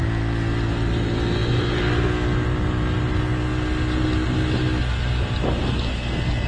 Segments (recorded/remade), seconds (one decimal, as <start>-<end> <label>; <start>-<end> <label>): 0.0-6.5 recorded